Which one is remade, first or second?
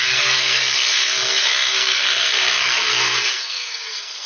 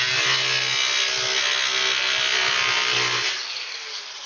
first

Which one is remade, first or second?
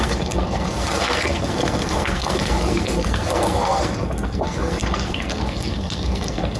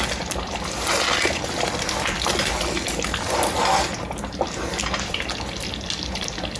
first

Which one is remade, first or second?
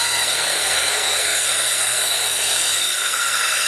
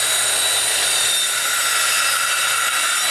first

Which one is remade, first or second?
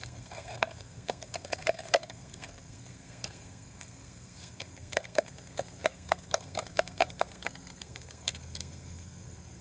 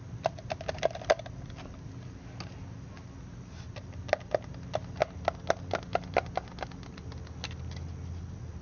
first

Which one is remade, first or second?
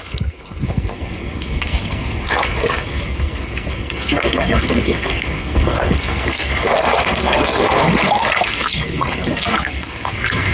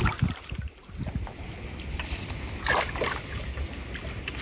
first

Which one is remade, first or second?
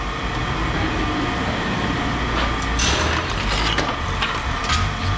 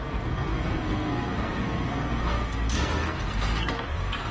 second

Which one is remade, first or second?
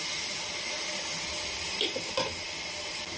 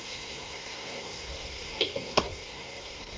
second